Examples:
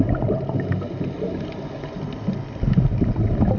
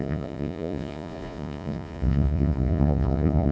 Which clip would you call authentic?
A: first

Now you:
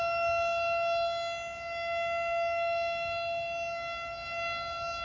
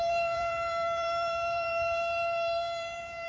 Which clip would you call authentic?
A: first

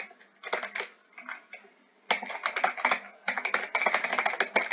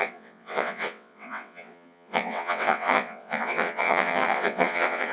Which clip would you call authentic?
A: first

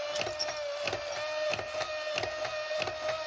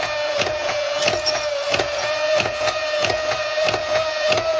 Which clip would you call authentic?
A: first